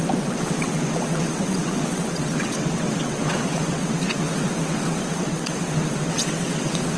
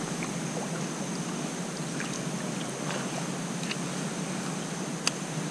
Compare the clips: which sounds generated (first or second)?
first